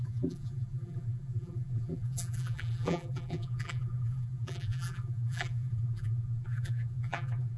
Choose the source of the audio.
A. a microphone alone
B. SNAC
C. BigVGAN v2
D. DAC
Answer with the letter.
C